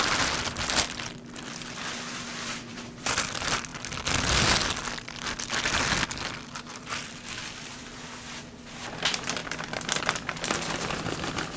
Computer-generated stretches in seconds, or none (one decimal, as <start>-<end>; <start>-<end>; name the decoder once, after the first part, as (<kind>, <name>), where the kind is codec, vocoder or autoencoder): 0.0-3.7 (vocoder, BigVGAN v2); 6.6-9.4; 10.0-11.6